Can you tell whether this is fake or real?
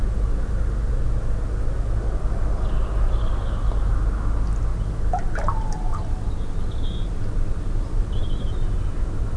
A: real